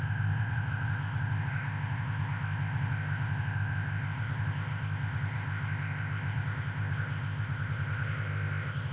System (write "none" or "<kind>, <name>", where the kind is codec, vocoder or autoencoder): codec, ZipCodec